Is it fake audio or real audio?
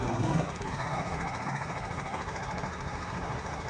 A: fake